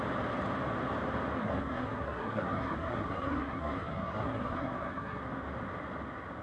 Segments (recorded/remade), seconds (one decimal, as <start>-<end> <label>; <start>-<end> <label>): 0.0-1.4 recorded; 1.4-5.2 remade; 5.2-6.4 recorded